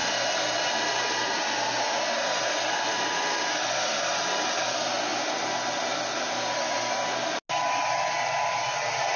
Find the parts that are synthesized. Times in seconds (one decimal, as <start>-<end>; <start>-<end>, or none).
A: none